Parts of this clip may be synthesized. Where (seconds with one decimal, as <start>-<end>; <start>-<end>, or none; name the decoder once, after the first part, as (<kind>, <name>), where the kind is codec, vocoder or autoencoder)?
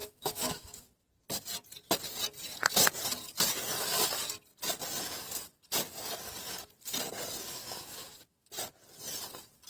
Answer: 0.0-1.0 (autoencoder, DAC-VAE); 7.6-8.5